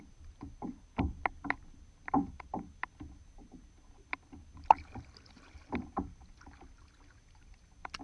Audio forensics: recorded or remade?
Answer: recorded